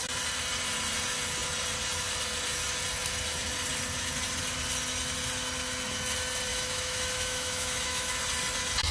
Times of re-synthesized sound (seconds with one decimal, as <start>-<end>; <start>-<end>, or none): 6.5-8.2